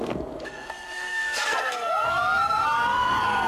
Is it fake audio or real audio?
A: fake